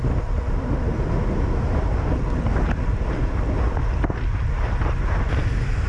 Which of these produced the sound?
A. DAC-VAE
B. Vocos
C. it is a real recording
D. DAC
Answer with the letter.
C